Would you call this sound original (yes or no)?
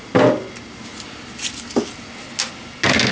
yes